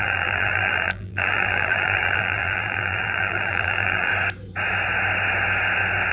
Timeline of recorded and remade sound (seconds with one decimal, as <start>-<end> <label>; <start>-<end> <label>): 0.0-4.1 remade; 4.1-6.1 recorded